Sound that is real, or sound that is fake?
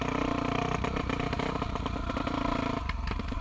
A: fake